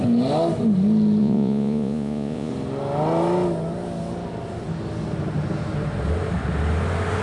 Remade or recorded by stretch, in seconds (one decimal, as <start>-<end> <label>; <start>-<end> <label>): 0.0-1.2 recorded; 1.2-2.5 remade; 2.5-7.2 recorded